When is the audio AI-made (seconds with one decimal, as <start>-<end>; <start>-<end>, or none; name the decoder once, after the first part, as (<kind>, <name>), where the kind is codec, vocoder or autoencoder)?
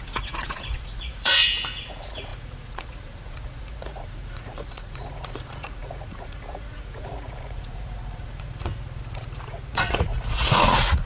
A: 0.0-11.1 (vocoder, Vocos)